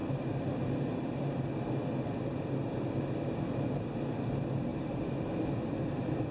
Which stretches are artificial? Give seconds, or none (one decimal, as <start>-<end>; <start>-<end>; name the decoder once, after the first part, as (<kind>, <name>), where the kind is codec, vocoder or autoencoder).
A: none

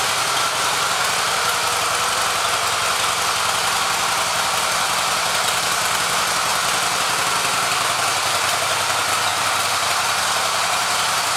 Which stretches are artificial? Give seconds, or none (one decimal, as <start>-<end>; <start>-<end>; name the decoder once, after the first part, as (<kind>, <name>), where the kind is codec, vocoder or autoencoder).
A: 6.5-7.2 (vocoder, BigVGAN v2); 9.3-9.9

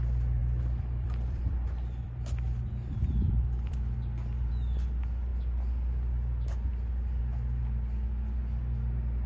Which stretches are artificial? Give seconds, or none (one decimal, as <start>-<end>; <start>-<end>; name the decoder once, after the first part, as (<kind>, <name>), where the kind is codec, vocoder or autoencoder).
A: 0.4-4.5 (vocoder, BigVGAN v2)

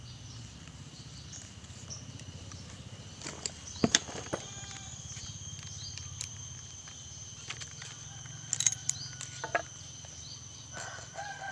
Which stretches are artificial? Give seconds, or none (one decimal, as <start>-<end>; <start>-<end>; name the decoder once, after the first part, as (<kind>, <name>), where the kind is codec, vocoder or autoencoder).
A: 0.0-11.5 (vocoder, BigVGAN v2)

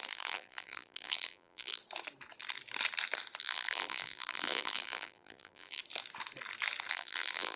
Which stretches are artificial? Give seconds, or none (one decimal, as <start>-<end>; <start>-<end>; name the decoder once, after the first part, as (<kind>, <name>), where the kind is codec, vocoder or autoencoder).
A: 0.0-1.8 (vocoder, BigVGAN v2); 3.4-5.8; 6.9-7.6

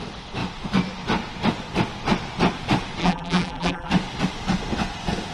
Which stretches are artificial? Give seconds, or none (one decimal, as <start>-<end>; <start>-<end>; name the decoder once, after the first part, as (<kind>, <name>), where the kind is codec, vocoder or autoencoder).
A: 3.0-3.9 (vocoder, BigVGAN v2)

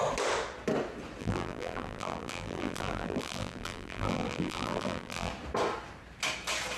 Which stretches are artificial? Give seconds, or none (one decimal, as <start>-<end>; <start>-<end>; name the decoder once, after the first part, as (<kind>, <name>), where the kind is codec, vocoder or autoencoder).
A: 1.2-5.3 (vocoder, BigVGAN v2)

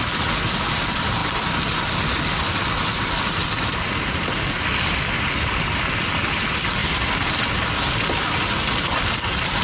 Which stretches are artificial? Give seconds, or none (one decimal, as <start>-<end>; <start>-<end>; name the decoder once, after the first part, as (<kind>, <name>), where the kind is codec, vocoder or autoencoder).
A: 6.8-9.2 (vocoder, BigVGAN v2)